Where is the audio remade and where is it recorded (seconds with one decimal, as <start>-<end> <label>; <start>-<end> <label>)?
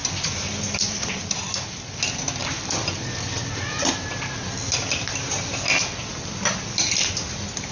0.0-2.0 remade; 2.0-2.4 recorded; 2.4-3.6 remade; 3.6-7.7 recorded